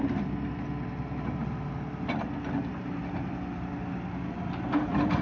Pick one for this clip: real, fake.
real